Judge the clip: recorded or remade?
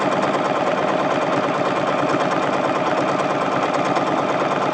recorded